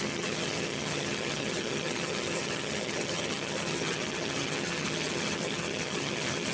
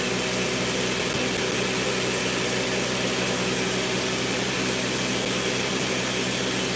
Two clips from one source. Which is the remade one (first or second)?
first